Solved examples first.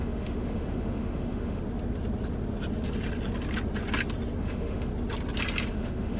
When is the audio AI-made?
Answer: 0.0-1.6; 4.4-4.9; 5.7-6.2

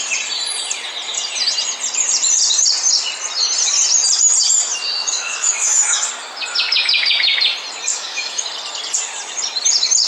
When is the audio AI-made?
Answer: 5.0-6.1; 7.9-8.5

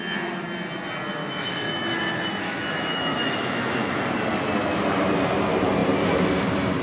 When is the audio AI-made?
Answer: 1.2-4.0

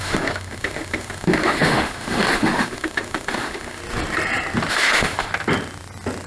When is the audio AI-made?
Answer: 0.0-3.8; 4.7-5.3